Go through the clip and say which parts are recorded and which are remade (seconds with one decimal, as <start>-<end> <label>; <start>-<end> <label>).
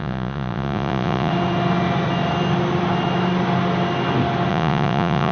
0.0-1.3 remade; 1.3-4.5 recorded; 4.5-5.3 remade